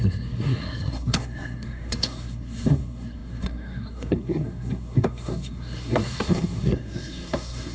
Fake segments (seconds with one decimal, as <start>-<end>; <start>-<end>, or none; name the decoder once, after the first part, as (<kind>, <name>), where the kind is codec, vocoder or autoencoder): 0.0-7.7 (codec, SNAC)